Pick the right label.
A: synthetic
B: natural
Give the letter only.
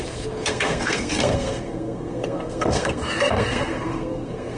A